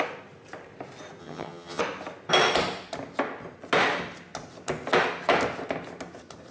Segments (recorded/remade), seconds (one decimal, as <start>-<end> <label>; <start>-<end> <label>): 0.0-1.2 recorded; 1.2-1.8 remade; 1.8-6.5 recorded